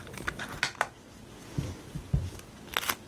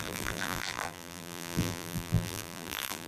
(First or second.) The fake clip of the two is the second